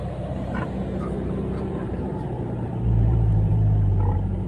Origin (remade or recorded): remade